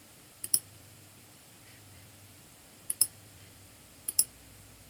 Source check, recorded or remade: remade